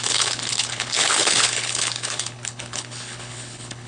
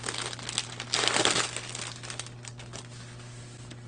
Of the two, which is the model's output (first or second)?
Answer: first